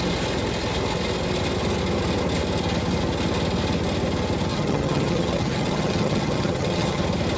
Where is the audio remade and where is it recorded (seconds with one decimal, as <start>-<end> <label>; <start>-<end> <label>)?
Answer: 0.0-4.5 recorded; 4.5-7.0 remade; 7.0-7.4 recorded